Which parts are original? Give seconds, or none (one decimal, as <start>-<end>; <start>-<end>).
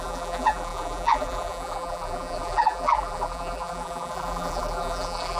none